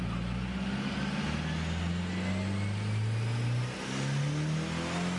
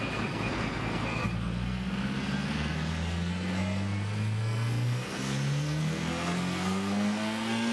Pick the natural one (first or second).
first